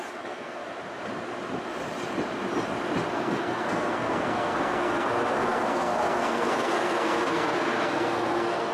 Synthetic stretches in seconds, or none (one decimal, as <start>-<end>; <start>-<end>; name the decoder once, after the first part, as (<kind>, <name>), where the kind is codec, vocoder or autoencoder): 0.0-0.6 (codec, SNAC); 3.1-8.7